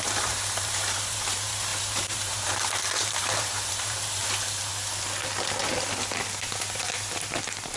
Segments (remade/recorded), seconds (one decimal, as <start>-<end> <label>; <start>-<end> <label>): 0.0-4.7 remade; 4.7-7.8 recorded